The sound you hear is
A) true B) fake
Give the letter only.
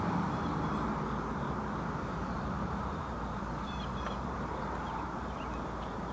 B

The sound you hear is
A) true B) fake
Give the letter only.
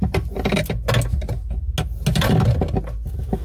A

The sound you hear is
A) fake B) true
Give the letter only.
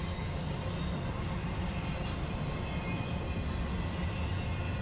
B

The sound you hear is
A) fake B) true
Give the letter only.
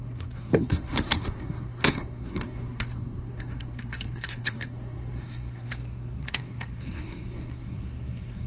A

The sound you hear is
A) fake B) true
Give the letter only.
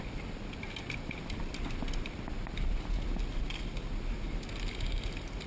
B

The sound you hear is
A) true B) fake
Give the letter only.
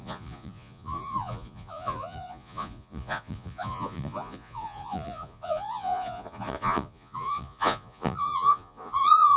B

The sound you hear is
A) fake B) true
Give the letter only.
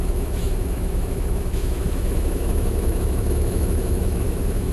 A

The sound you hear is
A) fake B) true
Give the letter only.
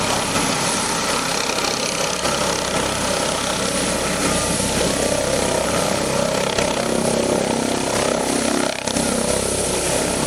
B